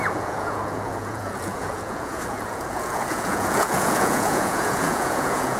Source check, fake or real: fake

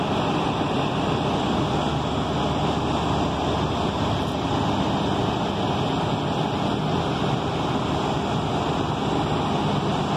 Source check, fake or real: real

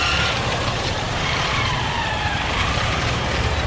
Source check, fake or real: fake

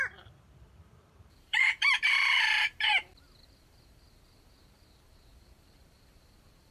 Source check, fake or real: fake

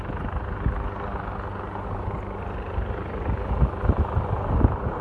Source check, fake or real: real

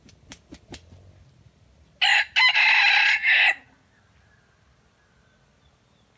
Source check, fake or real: real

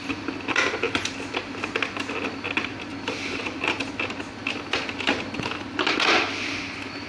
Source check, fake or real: real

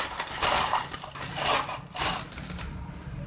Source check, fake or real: real